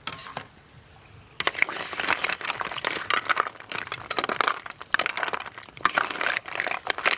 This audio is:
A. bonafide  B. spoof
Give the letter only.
A